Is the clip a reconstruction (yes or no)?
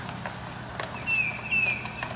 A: no